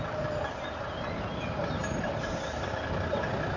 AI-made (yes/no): no